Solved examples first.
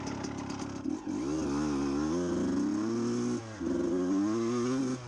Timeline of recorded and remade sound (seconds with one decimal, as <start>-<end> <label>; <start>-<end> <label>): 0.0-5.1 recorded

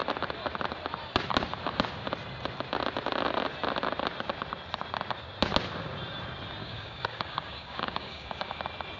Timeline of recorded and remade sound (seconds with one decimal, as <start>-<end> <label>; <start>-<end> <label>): 0.0-6.6 recorded; 6.6-8.6 remade; 8.6-9.0 recorded

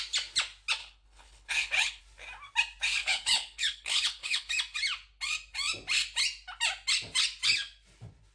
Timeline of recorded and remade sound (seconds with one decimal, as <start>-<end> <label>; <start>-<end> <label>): 0.0-0.8 recorded; 0.8-2.0 remade; 2.0-3.0 recorded; 3.0-4.5 remade; 4.5-8.3 recorded

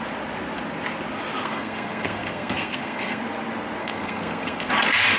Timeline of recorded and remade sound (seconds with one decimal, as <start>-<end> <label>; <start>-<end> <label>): 0.0-1.4 recorded; 1.4-3.2 remade; 3.2-3.8 recorded; 3.8-4.7 remade; 4.7-5.2 recorded